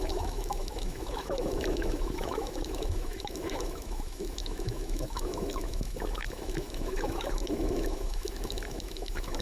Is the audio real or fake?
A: fake